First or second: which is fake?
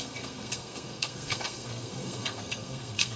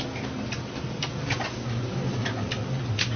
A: first